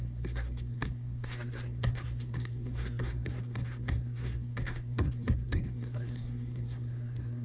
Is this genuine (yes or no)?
no